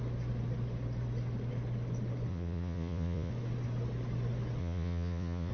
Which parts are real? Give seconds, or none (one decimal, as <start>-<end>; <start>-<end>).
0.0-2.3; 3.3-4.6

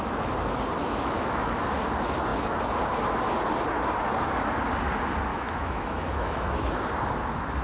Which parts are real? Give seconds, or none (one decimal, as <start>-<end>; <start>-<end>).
0.0-0.8; 1.6-5.3; 6.7-7.6

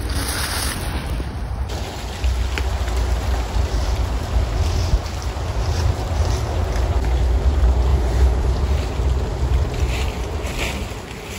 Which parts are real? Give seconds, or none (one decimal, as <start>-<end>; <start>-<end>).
0.0-7.9; 8.6-11.4

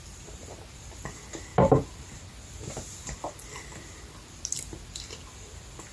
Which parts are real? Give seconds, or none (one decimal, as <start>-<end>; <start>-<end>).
0.0-5.9

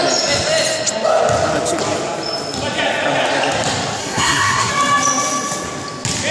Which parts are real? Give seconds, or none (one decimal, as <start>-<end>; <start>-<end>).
0.0-4.0; 4.7-6.3

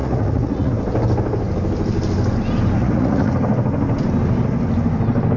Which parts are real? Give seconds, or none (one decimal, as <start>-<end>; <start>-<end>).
0.7-2.8; 3.3-5.4

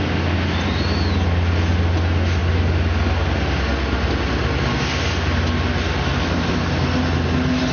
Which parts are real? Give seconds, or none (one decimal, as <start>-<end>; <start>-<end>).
0.0-7.7

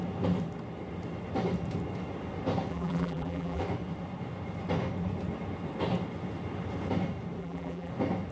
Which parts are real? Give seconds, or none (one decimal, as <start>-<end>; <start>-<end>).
0.0-2.7; 3.6-7.4; 7.9-8.3